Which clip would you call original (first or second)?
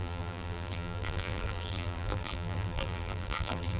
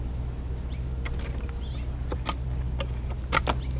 second